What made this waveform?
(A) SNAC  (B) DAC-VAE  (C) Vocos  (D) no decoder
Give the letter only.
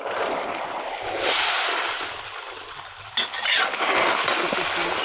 D